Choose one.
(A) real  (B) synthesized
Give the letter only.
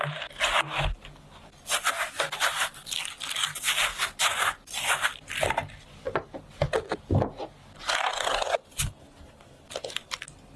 A